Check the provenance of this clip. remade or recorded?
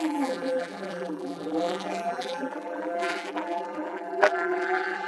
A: remade